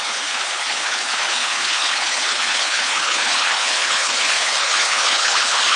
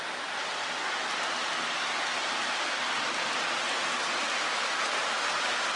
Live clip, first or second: second